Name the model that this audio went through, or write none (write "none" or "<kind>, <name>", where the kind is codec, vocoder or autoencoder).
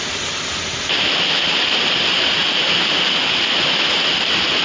none